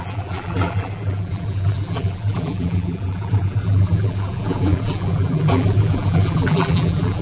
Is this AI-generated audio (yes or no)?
yes